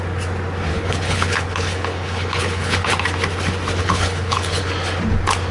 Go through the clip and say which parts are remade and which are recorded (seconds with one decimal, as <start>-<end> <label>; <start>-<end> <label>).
0.0-0.7 recorded; 0.7-2.9 remade; 2.9-3.8 recorded; 3.8-4.7 remade; 4.7-5.5 recorded